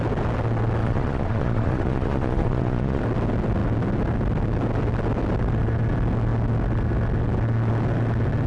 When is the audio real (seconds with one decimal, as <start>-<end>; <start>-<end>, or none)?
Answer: 0.0-0.8; 3.0-8.5